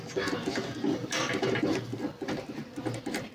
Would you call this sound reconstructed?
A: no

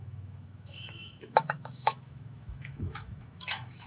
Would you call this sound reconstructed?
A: yes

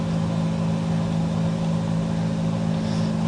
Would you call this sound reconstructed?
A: no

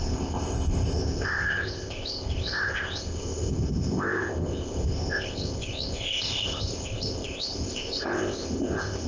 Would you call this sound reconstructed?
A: yes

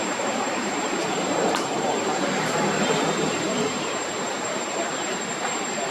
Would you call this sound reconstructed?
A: yes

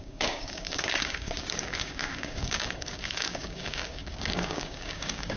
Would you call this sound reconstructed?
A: yes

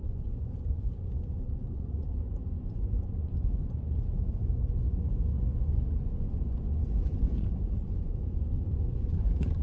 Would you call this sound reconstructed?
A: yes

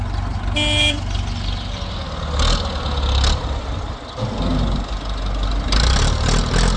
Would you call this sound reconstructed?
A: no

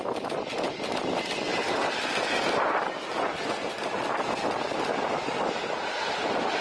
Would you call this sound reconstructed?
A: no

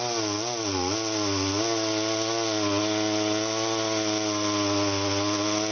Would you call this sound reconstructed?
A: no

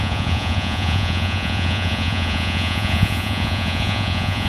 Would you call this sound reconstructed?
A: yes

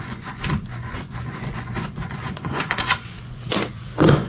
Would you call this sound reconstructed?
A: yes